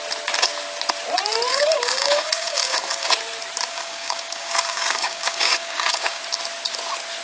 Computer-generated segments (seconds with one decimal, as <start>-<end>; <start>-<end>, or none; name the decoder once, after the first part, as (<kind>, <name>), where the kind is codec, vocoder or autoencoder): 1.5-3.1 (codec, DAC); 3.7-6.2